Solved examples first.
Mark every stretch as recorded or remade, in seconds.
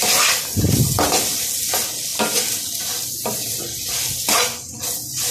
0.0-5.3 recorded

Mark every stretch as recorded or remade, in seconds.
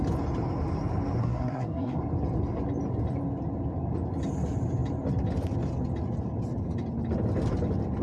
0.0-1.2 recorded; 1.2-2.0 remade; 2.0-8.0 recorded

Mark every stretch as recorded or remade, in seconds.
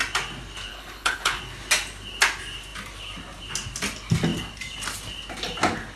0.0-0.7 recorded; 0.7-1.4 remade; 1.4-6.0 recorded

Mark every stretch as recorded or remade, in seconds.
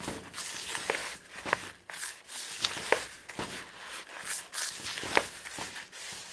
0.0-6.3 recorded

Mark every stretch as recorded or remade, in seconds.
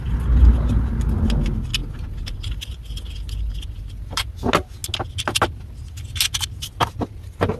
0.0-7.6 recorded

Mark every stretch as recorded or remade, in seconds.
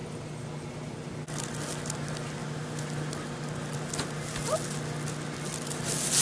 0.0-6.2 recorded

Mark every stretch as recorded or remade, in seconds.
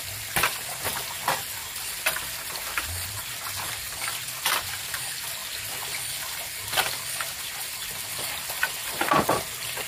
0.0-8.8 recorded; 8.8-9.4 remade; 9.4-9.9 recorded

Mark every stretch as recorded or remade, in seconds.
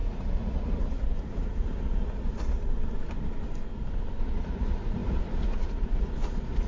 0.0-2.6 remade; 2.6-4.2 recorded; 4.2-6.7 remade